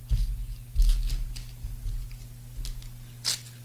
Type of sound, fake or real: real